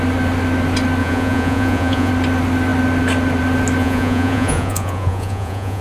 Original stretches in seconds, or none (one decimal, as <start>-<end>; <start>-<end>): 0.0-1.0; 2.1-3.8